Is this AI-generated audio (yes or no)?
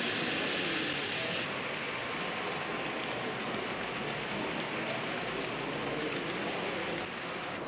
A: no